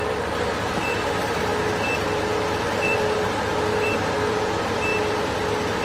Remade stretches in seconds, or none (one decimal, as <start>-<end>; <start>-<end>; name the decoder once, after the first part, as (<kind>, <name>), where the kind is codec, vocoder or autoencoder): 0.0-1.5 (vocoder, BigVGAN v2); 2.7-5.8